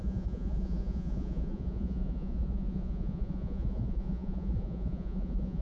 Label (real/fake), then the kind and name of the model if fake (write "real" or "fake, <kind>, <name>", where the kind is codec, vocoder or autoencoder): fake, vocoder, Vocos